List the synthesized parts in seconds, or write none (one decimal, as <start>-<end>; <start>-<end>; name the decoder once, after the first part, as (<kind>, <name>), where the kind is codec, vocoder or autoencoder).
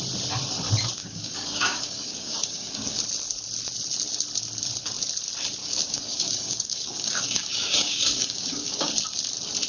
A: 1.0-3.0 (codec, DAC); 5.6-8.9